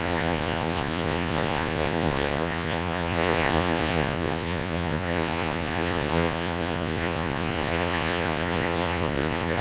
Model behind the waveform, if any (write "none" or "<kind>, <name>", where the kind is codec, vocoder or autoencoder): vocoder, Vocos